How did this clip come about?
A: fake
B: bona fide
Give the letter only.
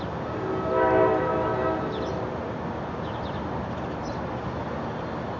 B